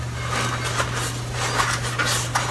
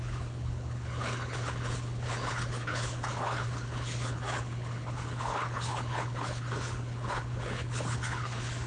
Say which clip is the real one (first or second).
first